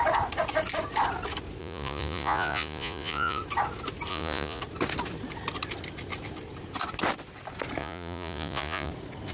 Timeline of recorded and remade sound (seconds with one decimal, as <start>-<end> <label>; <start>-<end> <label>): 0.0-1.6 recorded; 1.6-3.4 remade; 3.4-4.1 recorded; 4.1-4.6 remade; 4.6-7.8 recorded; 7.8-8.9 remade; 8.9-9.3 recorded